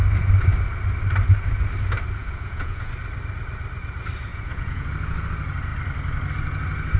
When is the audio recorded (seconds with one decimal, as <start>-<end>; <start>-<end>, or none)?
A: 0.0-2.2; 2.9-4.3; 4.9-7.0

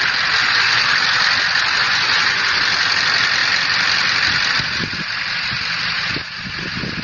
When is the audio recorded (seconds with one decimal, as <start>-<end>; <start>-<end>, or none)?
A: 0.0-0.4; 0.9-1.8; 2.6-7.0